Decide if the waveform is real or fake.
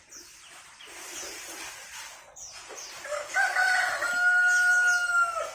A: real